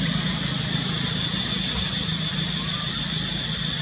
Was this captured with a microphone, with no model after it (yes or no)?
yes